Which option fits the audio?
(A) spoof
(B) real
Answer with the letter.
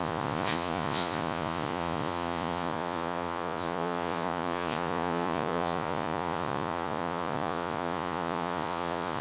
A